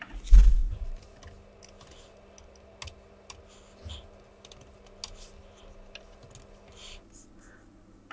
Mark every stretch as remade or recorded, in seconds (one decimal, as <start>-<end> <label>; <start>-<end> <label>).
0.0-8.1 recorded

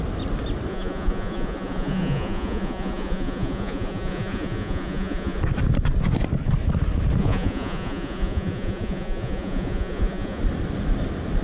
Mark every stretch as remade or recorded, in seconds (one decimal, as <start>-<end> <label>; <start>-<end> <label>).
0.0-0.7 recorded; 0.7-5.4 remade; 5.4-7.2 recorded; 7.2-10.4 remade; 10.4-11.4 recorded